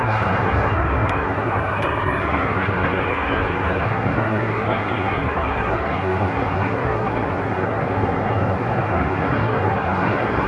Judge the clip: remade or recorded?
remade